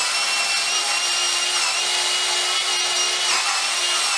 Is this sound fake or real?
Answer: real